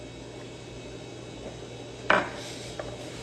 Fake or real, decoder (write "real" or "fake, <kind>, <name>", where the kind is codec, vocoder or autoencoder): real